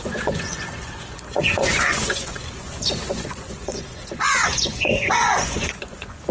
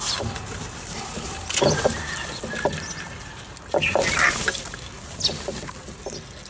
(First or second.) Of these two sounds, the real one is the second